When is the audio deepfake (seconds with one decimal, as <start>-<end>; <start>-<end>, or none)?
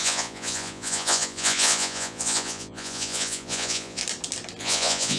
0.0-4.0; 4.6-5.2